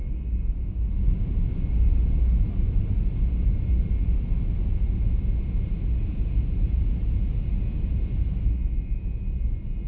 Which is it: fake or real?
real